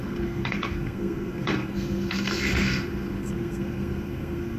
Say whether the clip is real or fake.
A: fake